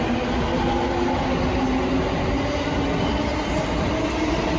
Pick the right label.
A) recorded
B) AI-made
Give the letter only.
A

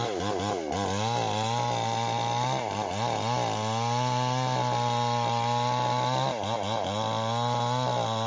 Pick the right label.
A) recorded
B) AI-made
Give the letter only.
A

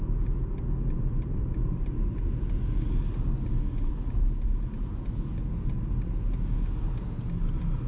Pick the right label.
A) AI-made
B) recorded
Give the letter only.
B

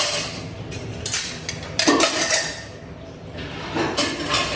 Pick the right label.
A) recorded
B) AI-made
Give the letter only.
A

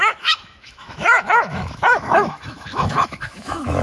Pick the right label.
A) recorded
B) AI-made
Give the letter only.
B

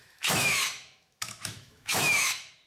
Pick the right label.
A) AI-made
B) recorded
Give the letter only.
A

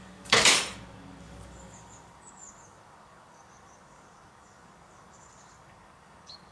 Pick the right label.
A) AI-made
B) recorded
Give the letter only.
A